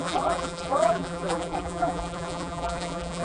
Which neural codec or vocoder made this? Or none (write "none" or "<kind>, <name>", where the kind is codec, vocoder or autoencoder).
vocoder, BigVGAN v2